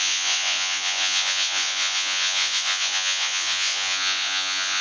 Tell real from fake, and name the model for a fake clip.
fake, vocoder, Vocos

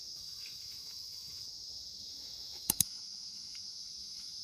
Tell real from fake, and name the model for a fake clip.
fake, autoencoder, DAC-VAE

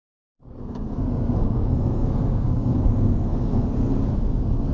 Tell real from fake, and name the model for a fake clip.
fake, codec, SNAC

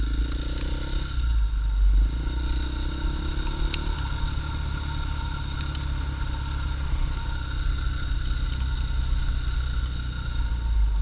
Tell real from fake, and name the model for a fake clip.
real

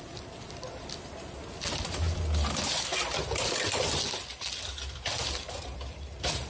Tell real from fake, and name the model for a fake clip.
real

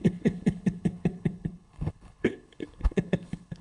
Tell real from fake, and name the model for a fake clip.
fake, codec, HILCodec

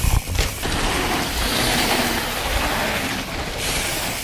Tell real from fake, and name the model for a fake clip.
real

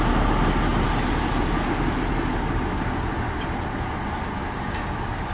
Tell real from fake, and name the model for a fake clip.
real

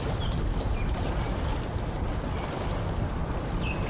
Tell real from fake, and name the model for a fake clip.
real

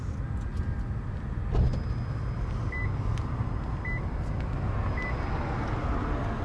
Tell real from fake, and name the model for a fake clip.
real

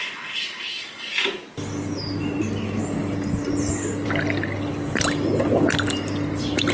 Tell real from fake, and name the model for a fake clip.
real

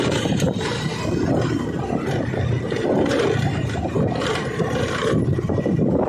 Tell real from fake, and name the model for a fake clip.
fake, vocoder, BigVGAN v2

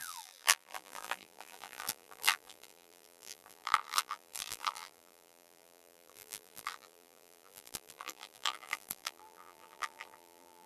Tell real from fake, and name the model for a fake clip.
fake, vocoder, BigVGAN v2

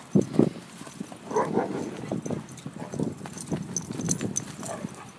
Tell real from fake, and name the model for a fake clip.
real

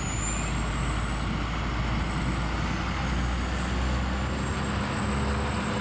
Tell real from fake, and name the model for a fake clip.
real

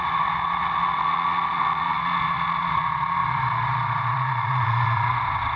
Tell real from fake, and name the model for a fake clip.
fake, vocoder, Vocos